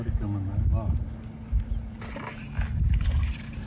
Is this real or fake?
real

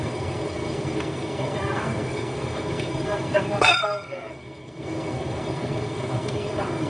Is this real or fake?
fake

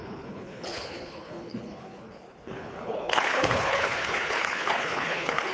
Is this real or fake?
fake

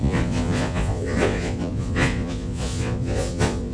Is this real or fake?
fake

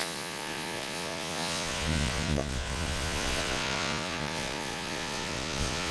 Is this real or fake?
fake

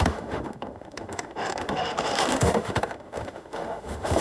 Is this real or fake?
fake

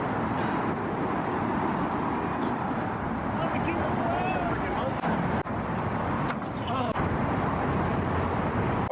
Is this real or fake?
real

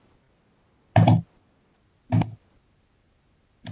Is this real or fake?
real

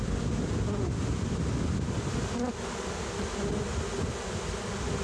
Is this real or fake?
real